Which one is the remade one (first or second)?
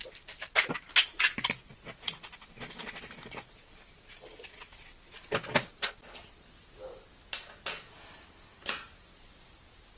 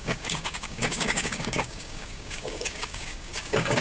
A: second